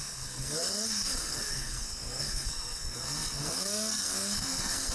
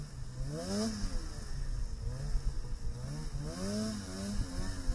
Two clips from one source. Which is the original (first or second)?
second